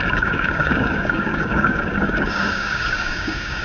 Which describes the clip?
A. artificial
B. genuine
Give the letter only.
A